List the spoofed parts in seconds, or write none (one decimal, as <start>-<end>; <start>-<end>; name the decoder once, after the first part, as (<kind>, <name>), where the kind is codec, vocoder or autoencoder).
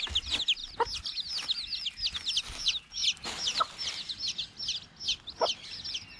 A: 3.0-3.6 (vocoder, BigVGAN v2)